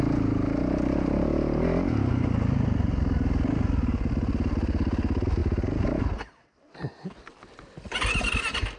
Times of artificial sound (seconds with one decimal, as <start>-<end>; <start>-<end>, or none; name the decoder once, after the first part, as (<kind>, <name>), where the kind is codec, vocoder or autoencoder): none